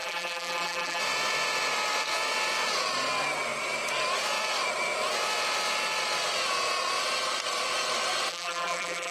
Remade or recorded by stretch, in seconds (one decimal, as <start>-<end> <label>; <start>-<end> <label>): 0.0-1.0 remade; 1.0-8.3 recorded; 8.3-9.1 remade